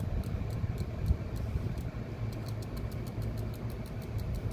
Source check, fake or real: real